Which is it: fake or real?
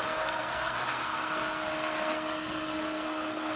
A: fake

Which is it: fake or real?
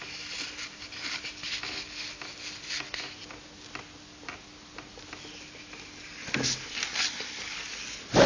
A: real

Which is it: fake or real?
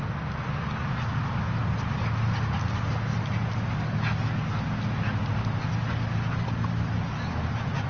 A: real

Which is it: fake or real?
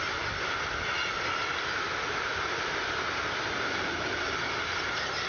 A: real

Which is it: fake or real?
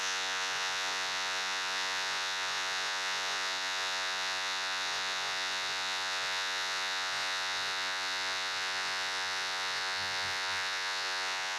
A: fake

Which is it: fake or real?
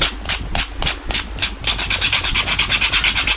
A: real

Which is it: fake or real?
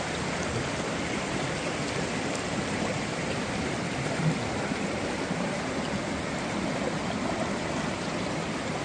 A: real